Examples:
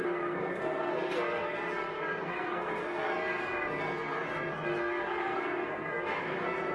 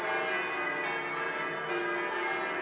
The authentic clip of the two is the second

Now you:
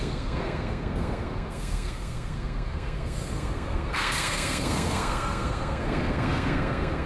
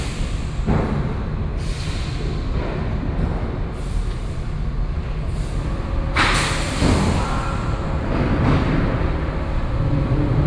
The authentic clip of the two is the second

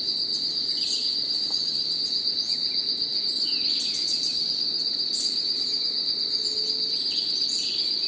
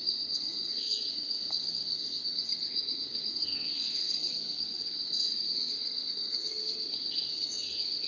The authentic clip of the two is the first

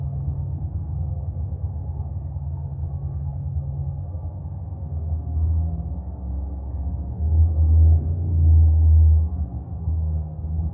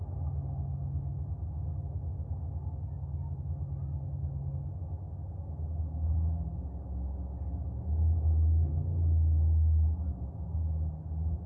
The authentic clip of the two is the second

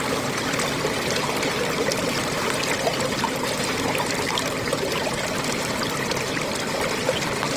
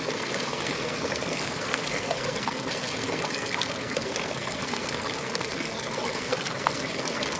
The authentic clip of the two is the first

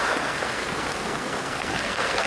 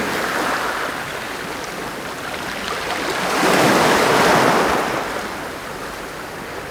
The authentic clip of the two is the second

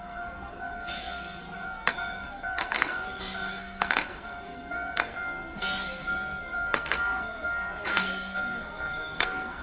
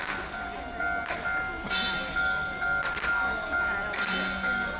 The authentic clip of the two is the second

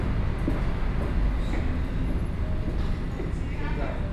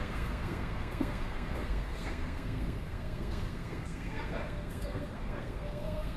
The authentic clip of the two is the first